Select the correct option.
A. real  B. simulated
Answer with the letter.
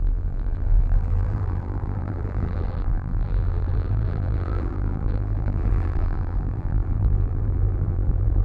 B